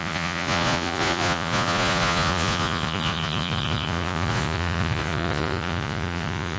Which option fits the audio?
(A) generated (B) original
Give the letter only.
A